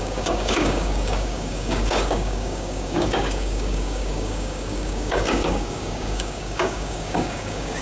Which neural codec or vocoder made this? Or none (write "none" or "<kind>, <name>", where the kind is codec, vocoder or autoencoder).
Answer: codec, DAC